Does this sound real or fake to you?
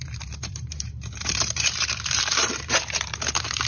fake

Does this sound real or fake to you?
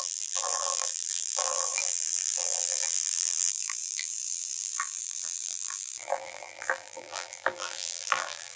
fake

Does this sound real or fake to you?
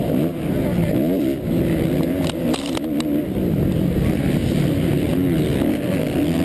real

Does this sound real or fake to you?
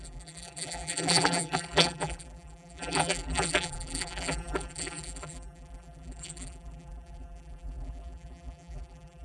fake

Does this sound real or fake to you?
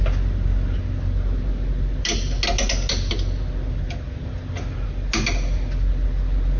real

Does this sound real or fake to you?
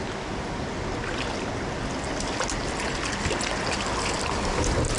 real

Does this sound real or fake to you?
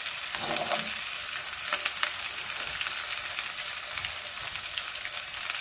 fake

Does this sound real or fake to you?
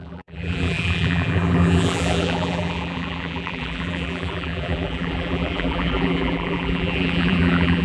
fake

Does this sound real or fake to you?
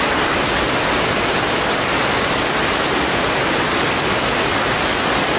real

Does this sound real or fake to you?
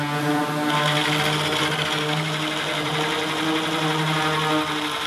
real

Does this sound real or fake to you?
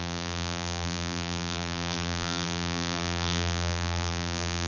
fake